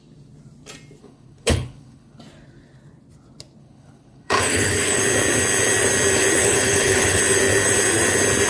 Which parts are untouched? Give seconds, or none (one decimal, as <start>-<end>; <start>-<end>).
0.0-1.0; 2.2-3.6; 5.0-6.4; 7.2-8.5

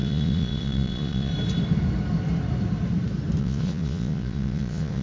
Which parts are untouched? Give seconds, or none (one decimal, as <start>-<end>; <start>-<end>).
1.3-3.4

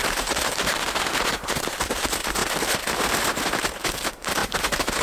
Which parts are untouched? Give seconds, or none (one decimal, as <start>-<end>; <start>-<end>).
2.4-3.8; 4.4-5.0

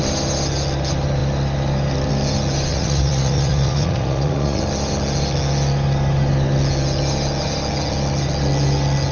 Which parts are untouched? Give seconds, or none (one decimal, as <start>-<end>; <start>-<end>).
0.0-2.7; 4.6-9.1

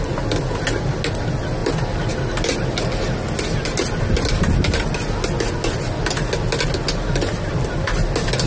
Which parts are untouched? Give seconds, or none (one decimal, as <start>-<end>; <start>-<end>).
0.0-8.5

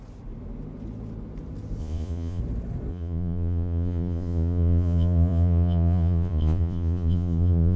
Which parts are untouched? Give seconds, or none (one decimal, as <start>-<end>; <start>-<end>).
0.0-1.8; 2.4-2.9

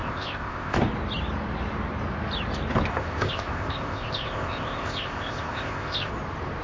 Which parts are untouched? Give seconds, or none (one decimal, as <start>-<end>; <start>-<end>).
0.8-2.9; 6.1-6.6